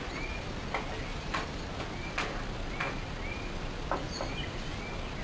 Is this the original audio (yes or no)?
yes